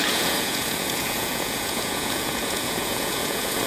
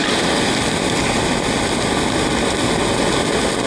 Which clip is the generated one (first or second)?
first